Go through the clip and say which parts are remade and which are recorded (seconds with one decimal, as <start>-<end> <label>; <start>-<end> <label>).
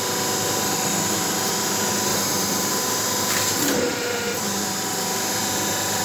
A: 0.0-0.9 recorded; 0.9-1.5 remade; 1.5-2.1 recorded; 2.1-5.4 remade; 5.4-6.0 recorded